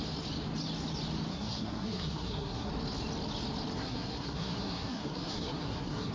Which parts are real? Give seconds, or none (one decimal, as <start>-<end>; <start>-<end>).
0.0-1.3; 2.7-3.8